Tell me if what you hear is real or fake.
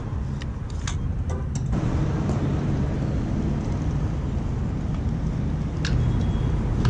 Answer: real